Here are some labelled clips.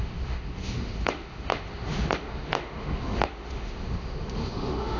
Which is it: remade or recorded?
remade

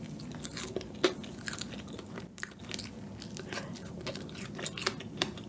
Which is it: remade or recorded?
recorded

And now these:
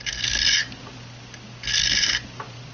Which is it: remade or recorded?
recorded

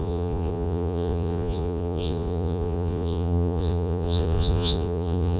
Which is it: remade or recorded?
remade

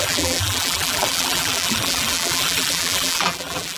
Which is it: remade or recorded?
remade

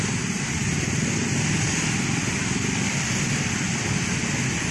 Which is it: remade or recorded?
recorded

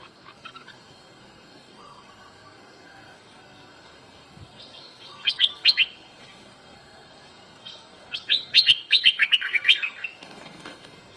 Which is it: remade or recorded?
remade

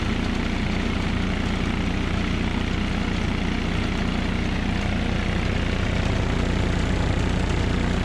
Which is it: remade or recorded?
recorded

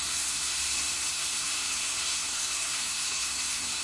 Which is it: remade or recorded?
remade